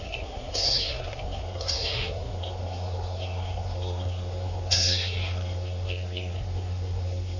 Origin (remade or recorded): remade